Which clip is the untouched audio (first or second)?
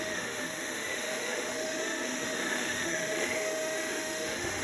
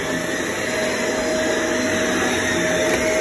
second